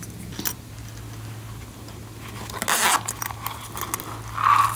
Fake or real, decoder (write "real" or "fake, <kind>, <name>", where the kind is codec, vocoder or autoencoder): real